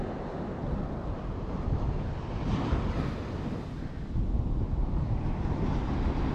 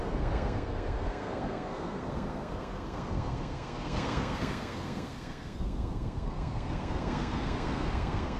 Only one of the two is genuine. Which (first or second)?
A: first